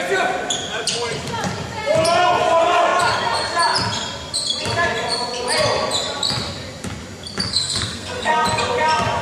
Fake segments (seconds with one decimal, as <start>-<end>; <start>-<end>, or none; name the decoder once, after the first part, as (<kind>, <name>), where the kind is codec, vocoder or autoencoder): 7.5-8.3 (codec, SNAC)